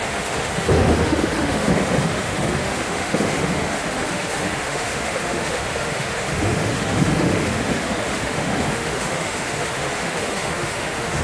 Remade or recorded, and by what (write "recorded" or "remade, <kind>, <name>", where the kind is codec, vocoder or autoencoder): remade, autoencoder, DAC-VAE